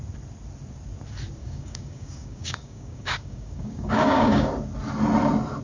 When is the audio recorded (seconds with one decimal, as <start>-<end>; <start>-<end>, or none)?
0.0-1.4; 4.5-5.6